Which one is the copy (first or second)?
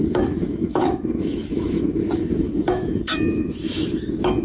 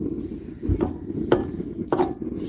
first